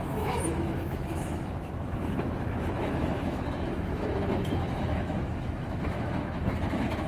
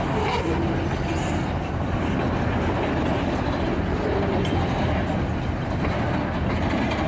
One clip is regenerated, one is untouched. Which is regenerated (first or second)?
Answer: first